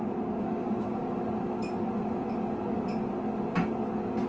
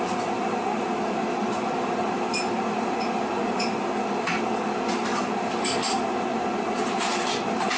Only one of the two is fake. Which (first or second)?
second